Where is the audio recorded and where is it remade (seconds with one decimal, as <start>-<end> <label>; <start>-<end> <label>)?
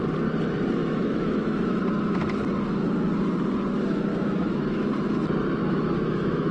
0.0-0.8 recorded; 0.8-1.8 remade; 1.8-4.1 recorded; 4.1-4.9 remade; 4.9-5.6 recorded; 5.6-6.5 remade